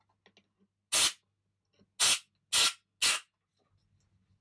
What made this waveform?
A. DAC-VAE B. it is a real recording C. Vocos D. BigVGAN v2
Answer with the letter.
B